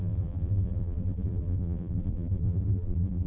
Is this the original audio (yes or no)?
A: no